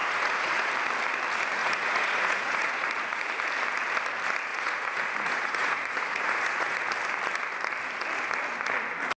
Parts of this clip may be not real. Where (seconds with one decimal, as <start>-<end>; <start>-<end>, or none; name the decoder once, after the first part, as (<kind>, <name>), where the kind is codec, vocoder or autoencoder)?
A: 0.0-0.7 (vocoder, Vocos); 1.6-3.3; 4.5-6.9

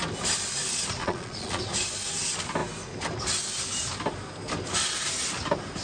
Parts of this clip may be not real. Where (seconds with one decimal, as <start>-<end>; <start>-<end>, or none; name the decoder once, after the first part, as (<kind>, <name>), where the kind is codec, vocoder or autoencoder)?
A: 1.0-1.6 (vocoder, Vocos)

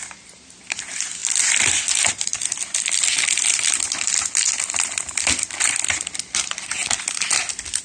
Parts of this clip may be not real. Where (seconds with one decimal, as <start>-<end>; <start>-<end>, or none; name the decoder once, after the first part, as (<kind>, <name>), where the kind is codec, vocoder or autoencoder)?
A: none